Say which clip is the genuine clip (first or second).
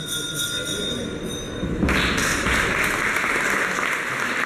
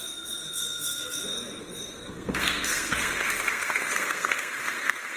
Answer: first